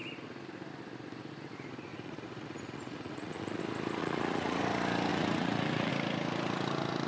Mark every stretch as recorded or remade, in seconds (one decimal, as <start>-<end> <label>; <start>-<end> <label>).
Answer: 0.0-1.9 recorded; 1.9-3.6 remade; 3.6-4.0 recorded; 4.0-4.6 remade; 4.6-5.1 recorded; 5.1-5.9 remade; 5.9-7.1 recorded